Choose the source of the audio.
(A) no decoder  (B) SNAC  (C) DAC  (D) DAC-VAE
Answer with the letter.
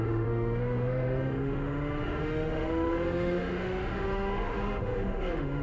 D